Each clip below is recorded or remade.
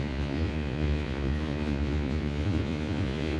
remade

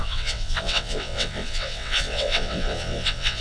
remade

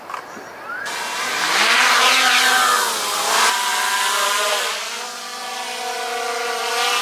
recorded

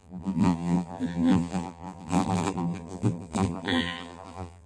remade